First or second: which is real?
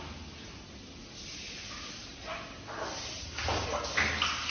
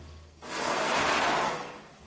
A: first